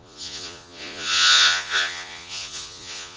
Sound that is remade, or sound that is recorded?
remade